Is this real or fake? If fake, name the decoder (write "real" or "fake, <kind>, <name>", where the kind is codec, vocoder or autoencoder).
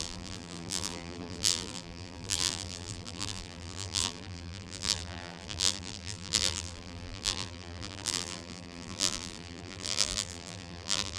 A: fake, vocoder, BigVGAN v2